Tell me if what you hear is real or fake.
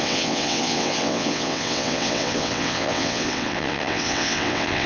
fake